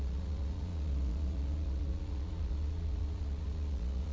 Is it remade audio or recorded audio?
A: remade